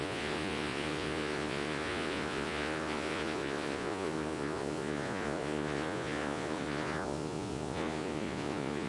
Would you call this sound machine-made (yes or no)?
yes